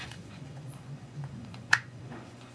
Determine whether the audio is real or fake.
fake